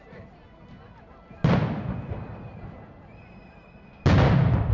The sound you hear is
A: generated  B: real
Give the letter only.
B